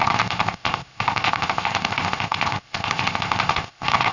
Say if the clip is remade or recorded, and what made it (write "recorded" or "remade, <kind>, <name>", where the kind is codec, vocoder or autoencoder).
remade, codec, ZipCodec